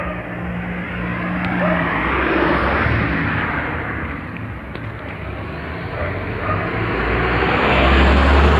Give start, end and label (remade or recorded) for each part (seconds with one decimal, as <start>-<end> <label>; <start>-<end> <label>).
0.0-8.6 recorded